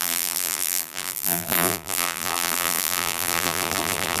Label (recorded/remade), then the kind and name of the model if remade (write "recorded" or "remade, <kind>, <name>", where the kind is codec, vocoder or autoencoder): remade, vocoder, BigVGAN v2